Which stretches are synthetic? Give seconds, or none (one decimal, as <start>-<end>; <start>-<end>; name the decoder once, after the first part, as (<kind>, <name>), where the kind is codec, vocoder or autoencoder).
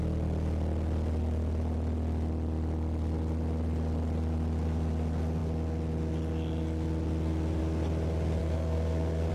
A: 8.4-9.3 (codec, SNAC)